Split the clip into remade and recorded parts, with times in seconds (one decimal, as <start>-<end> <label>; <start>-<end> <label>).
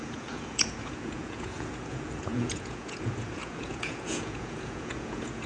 0.0-5.5 remade